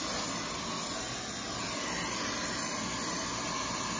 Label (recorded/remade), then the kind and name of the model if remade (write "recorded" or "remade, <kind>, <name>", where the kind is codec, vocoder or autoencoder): recorded